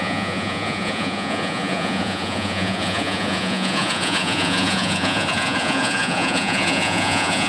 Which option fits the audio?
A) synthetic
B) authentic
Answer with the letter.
A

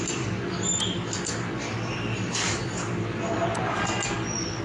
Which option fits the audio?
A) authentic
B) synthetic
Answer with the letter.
A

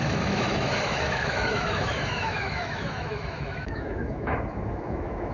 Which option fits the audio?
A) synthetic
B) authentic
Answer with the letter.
A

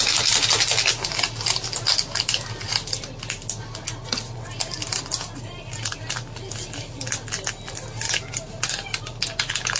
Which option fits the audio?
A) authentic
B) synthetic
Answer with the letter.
A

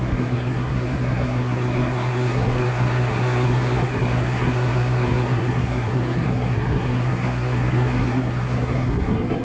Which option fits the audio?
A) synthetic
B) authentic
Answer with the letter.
A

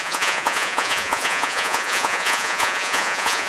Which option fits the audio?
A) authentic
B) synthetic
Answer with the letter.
B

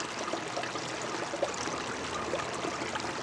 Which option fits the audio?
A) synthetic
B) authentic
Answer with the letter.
B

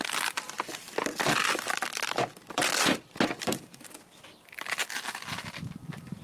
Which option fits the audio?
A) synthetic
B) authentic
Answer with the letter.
A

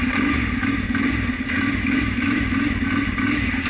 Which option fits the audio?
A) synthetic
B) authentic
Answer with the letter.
B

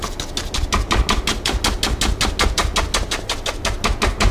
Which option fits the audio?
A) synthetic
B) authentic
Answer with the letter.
B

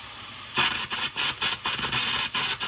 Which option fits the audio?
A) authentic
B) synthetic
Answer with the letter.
A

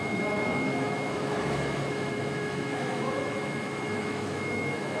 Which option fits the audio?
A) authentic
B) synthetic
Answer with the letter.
B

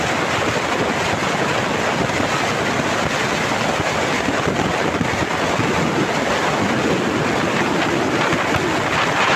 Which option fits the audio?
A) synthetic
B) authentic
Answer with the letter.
B